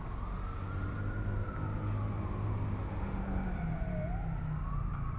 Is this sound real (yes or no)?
yes